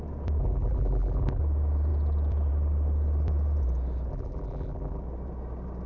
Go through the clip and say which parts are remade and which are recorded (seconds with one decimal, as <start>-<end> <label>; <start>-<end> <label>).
0.0-0.4 recorded; 0.4-1.4 remade; 1.4-4.1 recorded; 4.1-5.0 remade; 5.0-5.9 recorded